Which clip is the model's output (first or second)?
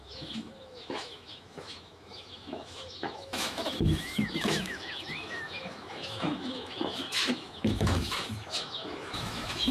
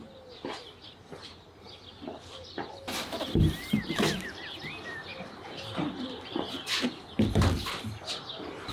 first